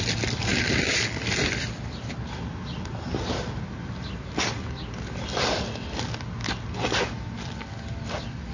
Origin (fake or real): real